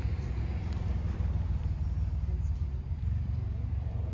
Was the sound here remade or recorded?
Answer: remade